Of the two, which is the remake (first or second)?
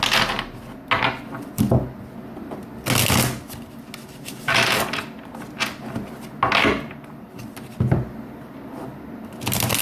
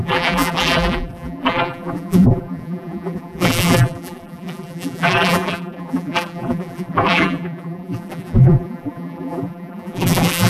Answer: second